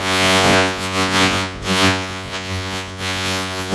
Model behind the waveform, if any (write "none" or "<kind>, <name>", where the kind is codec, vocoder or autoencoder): vocoder, Vocos